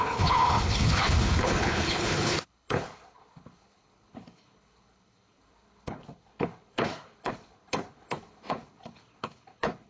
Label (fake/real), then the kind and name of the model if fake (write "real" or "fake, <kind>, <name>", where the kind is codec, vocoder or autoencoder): fake, codec, HILCodec